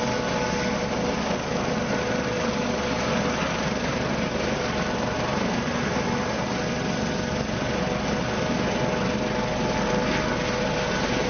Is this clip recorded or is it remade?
recorded